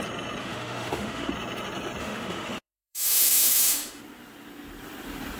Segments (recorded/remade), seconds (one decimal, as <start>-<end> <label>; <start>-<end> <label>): 0.0-0.4 recorded; 0.4-1.3 remade; 1.3-2.0 recorded; 2.0-4.0 remade; 4.0-5.4 recorded